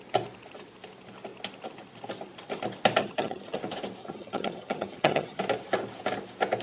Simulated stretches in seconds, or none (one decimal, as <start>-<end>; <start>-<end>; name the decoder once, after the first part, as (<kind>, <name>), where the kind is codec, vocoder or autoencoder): 3.0-3.6 (vocoder, HiFi-GAN); 4.0-5.4